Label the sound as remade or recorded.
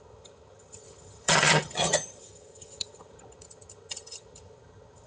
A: remade